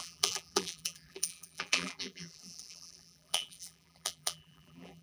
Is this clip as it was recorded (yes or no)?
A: no